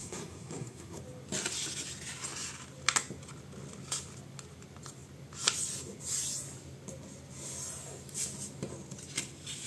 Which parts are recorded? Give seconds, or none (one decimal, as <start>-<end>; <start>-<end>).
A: 1.0-9.7